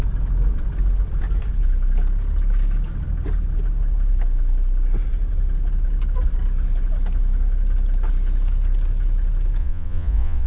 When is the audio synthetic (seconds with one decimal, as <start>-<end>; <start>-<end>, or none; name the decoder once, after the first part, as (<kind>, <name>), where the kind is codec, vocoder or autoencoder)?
9.6-10.5 (vocoder, Vocos)